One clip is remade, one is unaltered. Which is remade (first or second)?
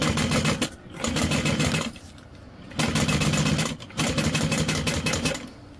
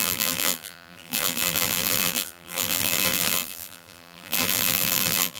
second